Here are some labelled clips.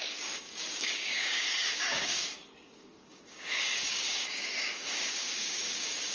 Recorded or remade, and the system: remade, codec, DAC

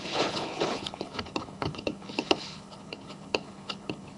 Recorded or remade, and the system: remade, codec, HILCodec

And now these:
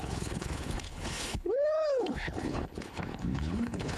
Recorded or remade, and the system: remade, codec, HILCodec